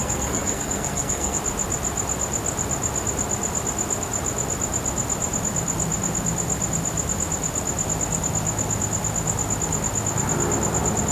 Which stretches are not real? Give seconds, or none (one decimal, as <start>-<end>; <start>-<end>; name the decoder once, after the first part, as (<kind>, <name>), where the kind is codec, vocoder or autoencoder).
0.0-1.4 (codec, SNAC)

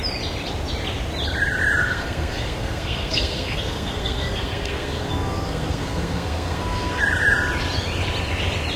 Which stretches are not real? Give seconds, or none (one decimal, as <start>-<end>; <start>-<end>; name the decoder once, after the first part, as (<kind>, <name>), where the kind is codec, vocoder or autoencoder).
1.8-7.0 (codec, SNAC)